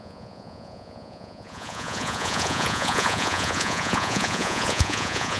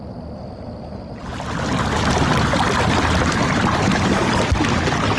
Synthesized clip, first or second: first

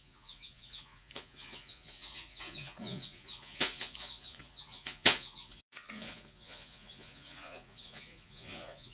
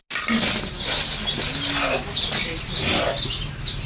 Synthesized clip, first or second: first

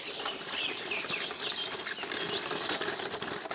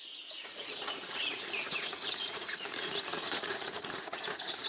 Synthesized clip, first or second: second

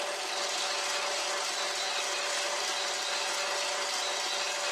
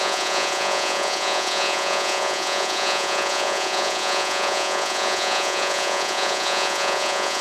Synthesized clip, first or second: second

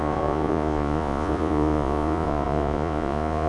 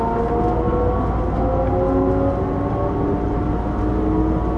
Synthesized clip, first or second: first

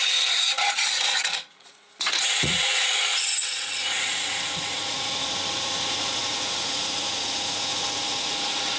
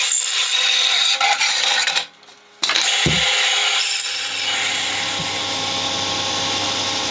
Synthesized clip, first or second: first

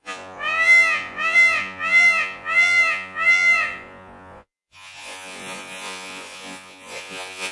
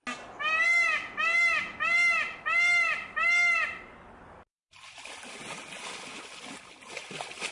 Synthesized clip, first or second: first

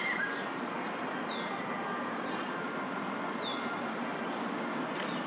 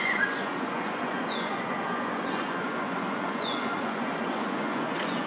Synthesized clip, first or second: second